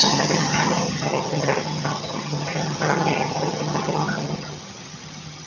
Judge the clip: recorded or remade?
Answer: remade